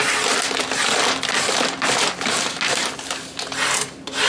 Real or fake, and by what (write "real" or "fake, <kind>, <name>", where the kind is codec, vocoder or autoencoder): real